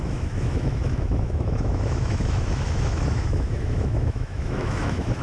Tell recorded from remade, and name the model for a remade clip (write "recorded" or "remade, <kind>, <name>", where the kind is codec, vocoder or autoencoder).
remade, autoencoder, DAC-VAE